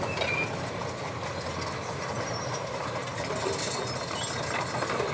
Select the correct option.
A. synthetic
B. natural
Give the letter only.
B